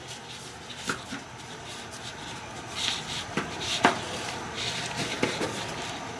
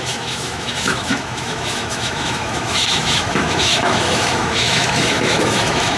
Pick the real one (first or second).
first